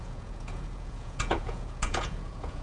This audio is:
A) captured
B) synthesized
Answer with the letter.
B